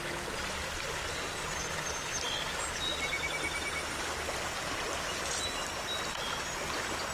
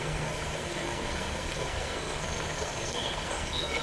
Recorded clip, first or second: first